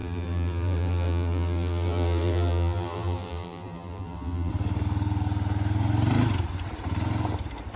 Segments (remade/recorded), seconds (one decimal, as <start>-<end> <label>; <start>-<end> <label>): 0.0-4.5 remade; 4.5-7.8 recorded